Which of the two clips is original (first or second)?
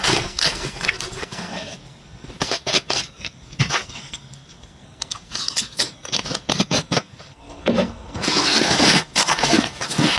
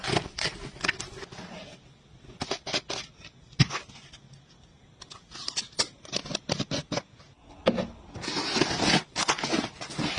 second